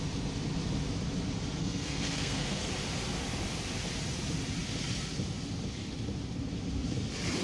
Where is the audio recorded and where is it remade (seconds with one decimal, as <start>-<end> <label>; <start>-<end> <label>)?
0.0-1.6 recorded; 1.6-2.7 remade; 2.7-7.4 recorded